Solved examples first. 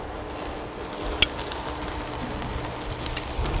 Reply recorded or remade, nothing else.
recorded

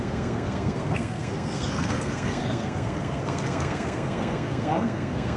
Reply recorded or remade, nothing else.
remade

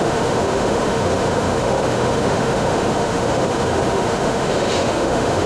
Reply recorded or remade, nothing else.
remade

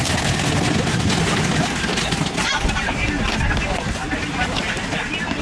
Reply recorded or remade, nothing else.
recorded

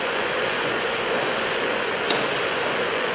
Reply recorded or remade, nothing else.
remade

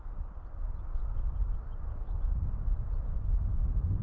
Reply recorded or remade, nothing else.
recorded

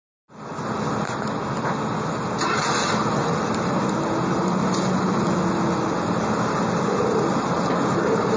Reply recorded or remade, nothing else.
recorded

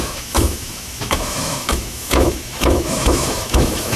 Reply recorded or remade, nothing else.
remade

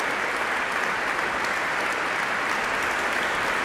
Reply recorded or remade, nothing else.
remade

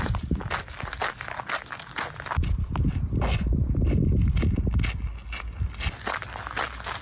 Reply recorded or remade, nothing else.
recorded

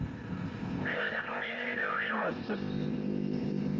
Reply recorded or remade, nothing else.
remade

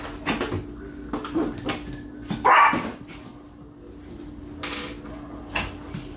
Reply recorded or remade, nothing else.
recorded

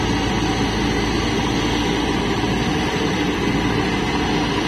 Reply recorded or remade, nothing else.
recorded